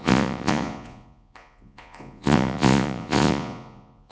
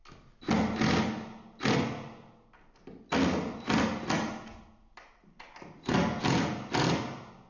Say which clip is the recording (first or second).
second